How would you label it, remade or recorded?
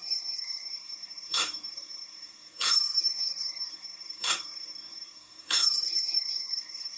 remade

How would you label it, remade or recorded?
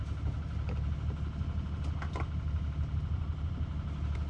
recorded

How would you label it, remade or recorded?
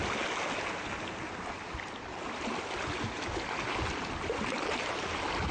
recorded